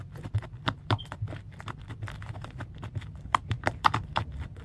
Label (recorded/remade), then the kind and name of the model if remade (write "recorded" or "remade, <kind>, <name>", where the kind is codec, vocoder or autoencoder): remade, vocoder, BigVGAN v2